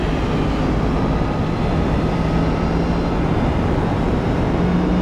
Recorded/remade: recorded